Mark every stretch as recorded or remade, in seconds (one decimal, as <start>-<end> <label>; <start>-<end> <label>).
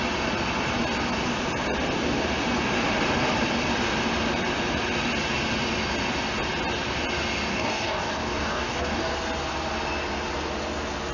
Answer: 0.0-7.5 recorded; 7.5-9.0 remade; 9.0-11.1 recorded